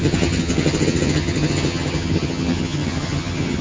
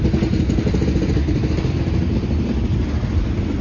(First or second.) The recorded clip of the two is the second